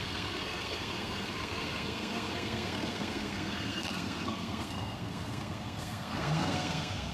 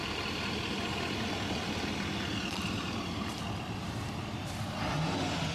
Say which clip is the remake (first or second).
first